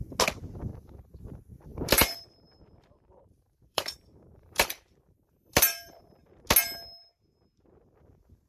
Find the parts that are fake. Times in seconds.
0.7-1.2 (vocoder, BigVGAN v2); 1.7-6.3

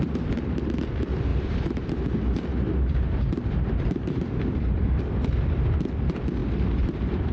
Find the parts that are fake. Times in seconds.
1.3-1.9 (vocoder, BigVGAN v2); 2.5-5.0; 6.4-7.3

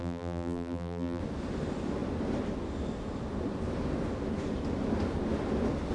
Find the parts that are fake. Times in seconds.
0.0-1.2 (vocoder, BigVGAN v2)

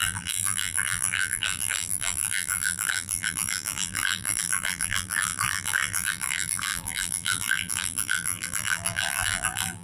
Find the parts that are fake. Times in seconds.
0.0-9.8 (vocoder, BigVGAN v2)

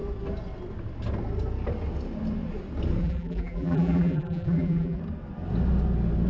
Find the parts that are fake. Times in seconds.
3.0-5.0 (vocoder, BigVGAN v2)

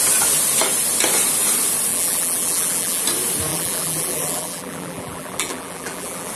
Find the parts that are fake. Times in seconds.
1.9-3.0 (vocoder, BigVGAN v2); 3.5-6.3

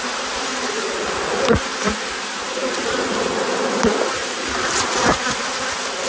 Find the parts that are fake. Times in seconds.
0.5-1.1 (vocoder, BigVGAN v2)